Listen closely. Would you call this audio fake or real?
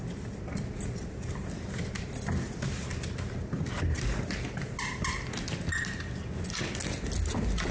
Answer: real